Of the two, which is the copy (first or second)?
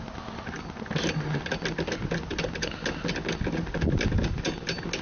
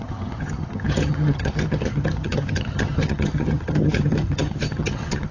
second